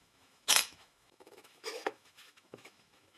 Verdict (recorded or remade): remade